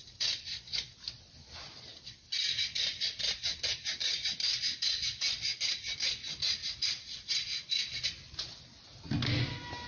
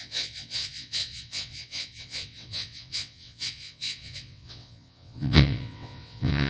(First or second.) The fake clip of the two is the second